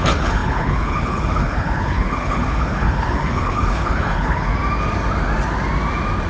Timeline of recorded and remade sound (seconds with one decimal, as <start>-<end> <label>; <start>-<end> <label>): 0.0-4.5 remade; 4.5-6.3 recorded